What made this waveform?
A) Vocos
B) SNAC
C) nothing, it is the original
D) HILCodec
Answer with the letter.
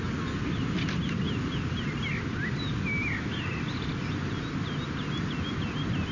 C